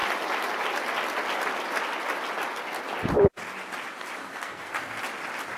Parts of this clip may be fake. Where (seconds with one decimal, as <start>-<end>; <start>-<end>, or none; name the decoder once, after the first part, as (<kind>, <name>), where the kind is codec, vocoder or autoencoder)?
4.2-5.0 (codec, SNAC)